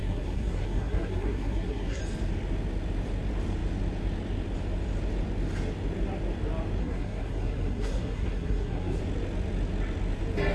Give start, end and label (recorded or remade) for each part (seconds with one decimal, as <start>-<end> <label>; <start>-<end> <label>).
0.0-2.0 remade; 2.0-6.8 recorded; 6.8-9.0 remade; 9.0-10.5 recorded